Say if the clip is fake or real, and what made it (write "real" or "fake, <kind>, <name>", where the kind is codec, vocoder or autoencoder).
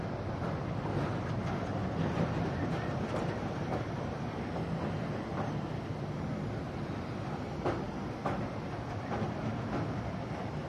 real